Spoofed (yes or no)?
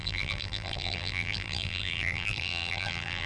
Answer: yes